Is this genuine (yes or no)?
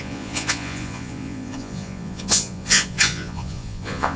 no